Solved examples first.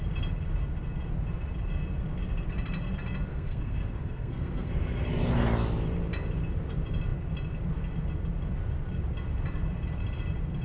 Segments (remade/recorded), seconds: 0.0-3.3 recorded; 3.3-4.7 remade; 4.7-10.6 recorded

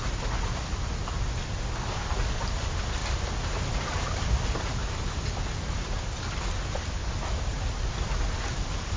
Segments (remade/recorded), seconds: 0.0-9.0 recorded

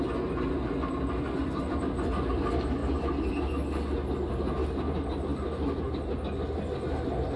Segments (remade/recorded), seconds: 0.0-1.4 recorded; 1.4-2.4 remade; 2.4-7.4 recorded

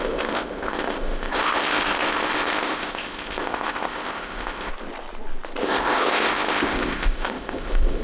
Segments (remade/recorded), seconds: 0.0-4.7 remade; 4.7-5.6 recorded; 5.6-8.0 remade

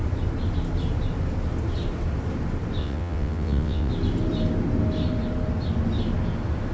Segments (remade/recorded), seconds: 0.0-2.8 recorded; 2.8-3.9 remade; 3.9-6.7 recorded

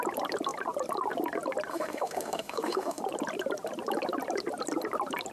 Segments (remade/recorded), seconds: 0.0-1.7 recorded; 1.7-3.0 remade; 3.0-5.3 recorded

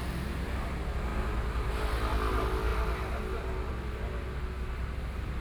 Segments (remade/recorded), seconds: 0.0-5.4 recorded

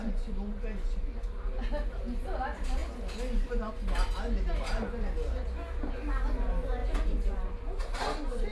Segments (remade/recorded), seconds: 0.0-8.5 recorded